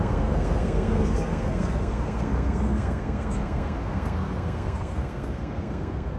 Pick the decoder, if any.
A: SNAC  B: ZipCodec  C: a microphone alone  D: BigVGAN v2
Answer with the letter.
A